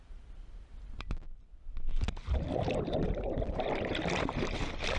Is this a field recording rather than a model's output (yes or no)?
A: no